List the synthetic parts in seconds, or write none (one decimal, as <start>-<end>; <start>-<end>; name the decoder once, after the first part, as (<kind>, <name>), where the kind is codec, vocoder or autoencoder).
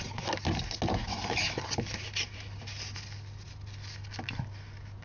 1.0-1.6 (autoencoder, DAC-VAE)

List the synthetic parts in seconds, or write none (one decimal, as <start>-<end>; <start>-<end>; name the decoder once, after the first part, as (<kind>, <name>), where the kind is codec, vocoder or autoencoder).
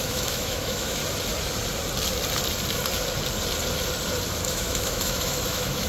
0.0-1.0 (autoencoder, DAC-VAE); 4.5-5.9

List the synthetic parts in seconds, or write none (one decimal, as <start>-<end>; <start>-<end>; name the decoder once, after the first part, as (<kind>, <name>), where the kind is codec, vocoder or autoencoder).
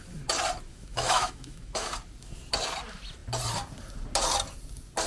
0.7-1.9 (autoencoder, DAC-VAE)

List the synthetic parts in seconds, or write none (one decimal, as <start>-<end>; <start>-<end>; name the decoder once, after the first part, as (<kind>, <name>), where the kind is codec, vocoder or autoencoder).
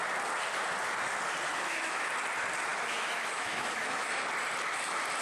1.5-2.1 (autoencoder, DAC-VAE); 2.7-4.1